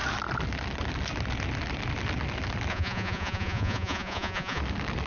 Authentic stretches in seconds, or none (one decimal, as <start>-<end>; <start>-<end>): 0.0-2.7; 4.6-5.1